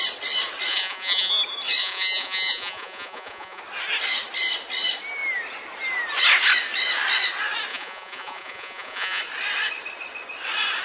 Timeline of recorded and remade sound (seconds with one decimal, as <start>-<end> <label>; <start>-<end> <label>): 0.0-0.7 recorded; 0.7-1.3 remade; 1.3-1.8 recorded; 1.8-3.6 remade; 3.6-7.7 recorded; 7.7-9.2 remade; 9.2-10.8 recorded

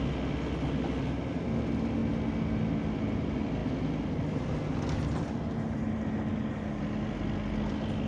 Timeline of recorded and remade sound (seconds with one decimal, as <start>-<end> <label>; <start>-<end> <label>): 0.0-8.1 recorded

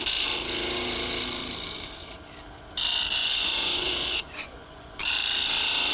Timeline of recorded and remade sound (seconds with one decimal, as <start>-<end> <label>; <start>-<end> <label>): 0.0-3.2 recorded; 3.2-5.0 remade; 5.0-5.9 recorded

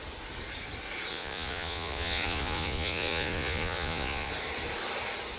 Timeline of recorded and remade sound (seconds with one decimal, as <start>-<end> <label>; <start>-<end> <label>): 0.0-1.1 recorded; 1.1-4.3 remade; 4.3-5.4 recorded

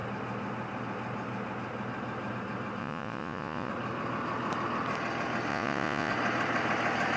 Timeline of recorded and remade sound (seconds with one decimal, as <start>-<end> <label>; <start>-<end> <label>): 0.0-2.8 recorded; 2.8-3.7 remade; 3.7-5.5 recorded; 5.5-6.1 remade; 6.1-7.2 recorded

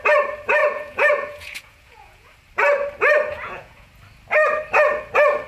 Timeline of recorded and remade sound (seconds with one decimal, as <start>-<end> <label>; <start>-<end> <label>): 0.0-0.6 recorded; 0.6-2.3 remade; 2.3-3.3 recorded; 3.3-3.9 remade; 3.9-5.5 recorded

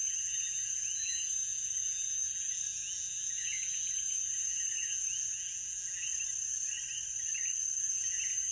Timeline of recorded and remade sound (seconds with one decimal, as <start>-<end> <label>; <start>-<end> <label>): 0.0-6.1 remade; 6.1-7.8 recorded; 7.8-8.5 remade